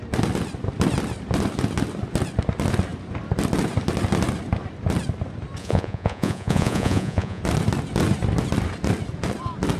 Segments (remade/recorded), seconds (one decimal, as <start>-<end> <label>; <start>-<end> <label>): 0.0-5.6 recorded; 5.6-7.4 remade; 7.4-9.8 recorded